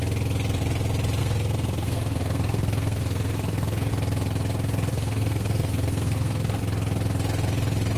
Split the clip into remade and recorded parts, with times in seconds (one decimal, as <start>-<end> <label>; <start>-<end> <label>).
0.0-1.2 recorded; 1.2-3.9 remade; 3.9-4.9 recorded; 4.9-6.6 remade; 6.6-8.0 recorded